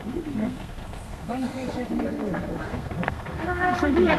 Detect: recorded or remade remade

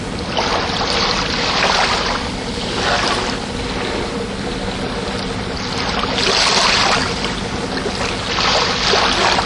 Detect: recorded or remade recorded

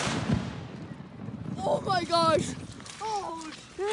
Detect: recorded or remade recorded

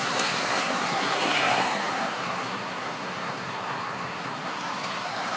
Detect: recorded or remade remade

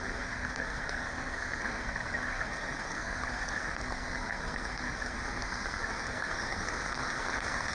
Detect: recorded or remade remade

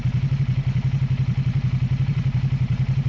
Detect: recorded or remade recorded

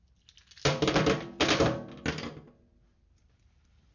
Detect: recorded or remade recorded